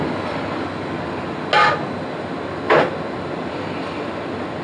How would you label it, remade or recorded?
recorded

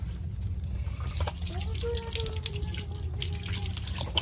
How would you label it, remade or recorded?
recorded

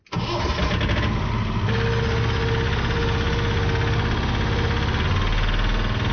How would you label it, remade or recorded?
recorded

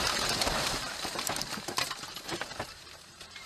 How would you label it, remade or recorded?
remade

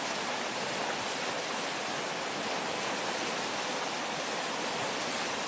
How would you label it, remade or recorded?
recorded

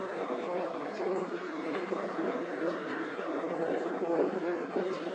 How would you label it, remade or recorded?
remade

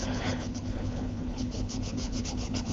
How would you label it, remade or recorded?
remade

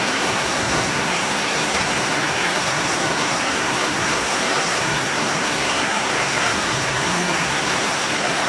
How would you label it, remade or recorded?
remade